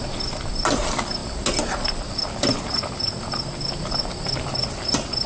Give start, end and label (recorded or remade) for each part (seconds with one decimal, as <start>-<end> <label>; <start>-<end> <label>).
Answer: 0.0-5.3 recorded